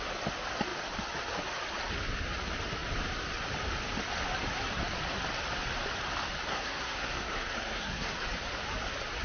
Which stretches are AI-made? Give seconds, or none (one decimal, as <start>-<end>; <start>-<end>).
6.5-8.1